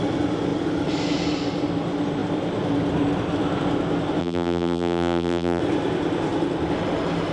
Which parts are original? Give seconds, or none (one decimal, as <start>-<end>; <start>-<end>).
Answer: 0.0-4.2; 5.6-7.3